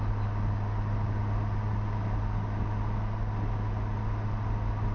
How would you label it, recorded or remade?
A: recorded